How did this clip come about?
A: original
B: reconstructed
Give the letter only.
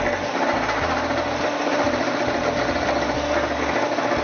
A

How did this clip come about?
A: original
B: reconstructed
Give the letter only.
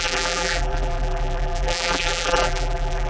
B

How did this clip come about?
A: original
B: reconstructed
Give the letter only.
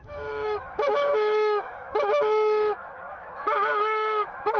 B